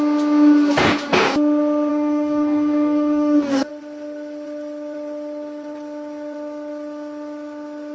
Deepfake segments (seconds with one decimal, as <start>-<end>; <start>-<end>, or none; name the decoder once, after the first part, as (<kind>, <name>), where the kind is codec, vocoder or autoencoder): 1.9-3.7 (codec, DAC)